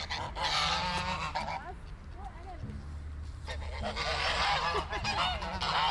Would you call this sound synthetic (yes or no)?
no